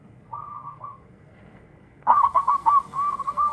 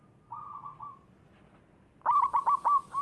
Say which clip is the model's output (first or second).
first